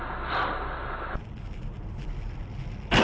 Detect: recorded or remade recorded